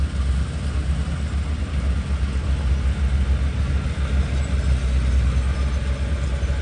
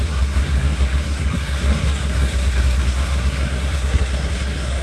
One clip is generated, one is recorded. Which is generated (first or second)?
second